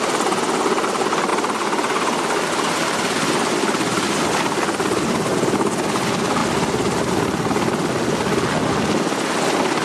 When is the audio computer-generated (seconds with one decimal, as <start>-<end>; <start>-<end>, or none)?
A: none